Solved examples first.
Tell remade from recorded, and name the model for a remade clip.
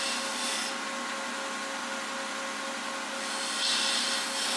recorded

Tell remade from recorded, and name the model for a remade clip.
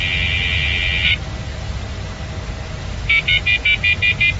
recorded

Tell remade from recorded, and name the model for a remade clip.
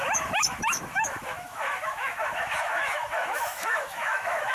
remade, autoencoder, DAC-VAE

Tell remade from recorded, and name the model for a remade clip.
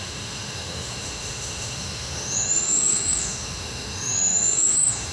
remade, autoencoder, DAC-VAE